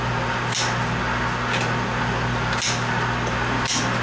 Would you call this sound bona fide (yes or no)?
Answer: yes